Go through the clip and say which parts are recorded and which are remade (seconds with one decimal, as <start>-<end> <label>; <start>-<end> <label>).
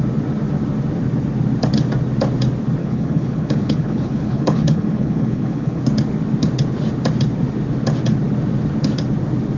0.0-2.8 recorded; 2.8-5.8 remade; 5.8-9.6 recorded